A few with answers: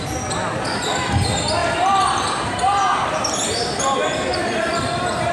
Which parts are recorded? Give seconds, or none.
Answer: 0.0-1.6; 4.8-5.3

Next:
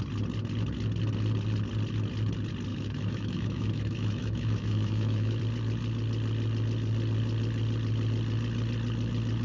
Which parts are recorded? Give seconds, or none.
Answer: 0.0-2.7; 5.4-9.4

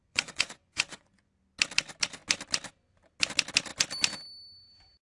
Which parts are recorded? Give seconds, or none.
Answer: 1.3-5.1

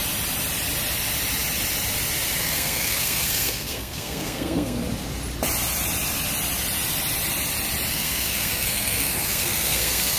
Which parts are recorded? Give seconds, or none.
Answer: 0.0-2.4; 4.8-7.9

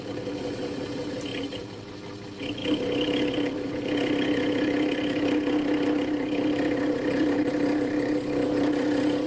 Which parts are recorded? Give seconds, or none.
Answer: 0.0-1.3; 1.9-6.5; 7.5-9.3

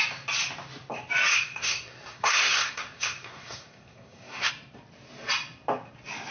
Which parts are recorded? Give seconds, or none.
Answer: 0.0-1.3; 4.5-6.3

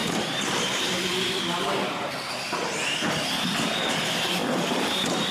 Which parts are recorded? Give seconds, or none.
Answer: 2.1-4.4

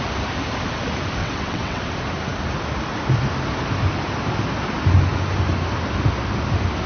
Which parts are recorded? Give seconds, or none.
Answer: 0.0-1.2; 1.8-6.9